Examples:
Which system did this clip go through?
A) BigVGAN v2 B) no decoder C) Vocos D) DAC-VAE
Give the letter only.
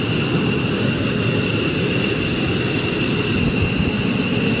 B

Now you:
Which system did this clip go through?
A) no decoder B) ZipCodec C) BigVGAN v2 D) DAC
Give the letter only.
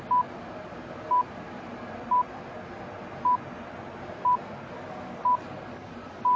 A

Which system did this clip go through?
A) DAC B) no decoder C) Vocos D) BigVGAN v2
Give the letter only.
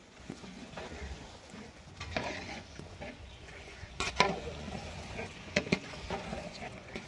C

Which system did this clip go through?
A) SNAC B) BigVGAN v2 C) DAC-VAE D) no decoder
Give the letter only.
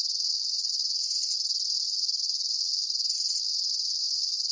D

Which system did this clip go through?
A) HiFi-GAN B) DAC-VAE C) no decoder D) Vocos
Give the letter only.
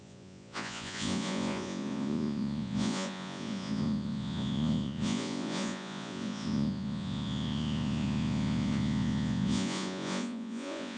D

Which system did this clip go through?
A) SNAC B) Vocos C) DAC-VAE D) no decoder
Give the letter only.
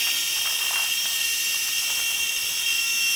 D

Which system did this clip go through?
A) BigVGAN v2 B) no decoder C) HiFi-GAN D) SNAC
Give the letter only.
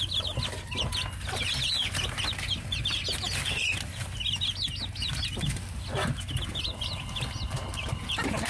B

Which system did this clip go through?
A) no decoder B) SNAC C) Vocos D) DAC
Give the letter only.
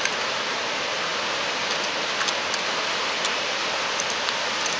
A